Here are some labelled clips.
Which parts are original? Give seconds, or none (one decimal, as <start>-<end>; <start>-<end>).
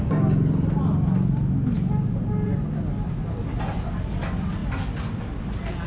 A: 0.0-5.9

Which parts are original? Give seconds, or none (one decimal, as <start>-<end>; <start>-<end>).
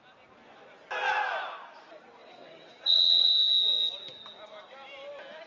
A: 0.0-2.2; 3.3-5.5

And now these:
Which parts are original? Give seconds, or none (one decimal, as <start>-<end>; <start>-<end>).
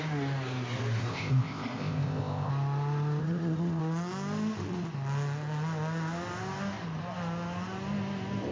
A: 0.0-1.1; 2.5-3.2; 3.8-8.5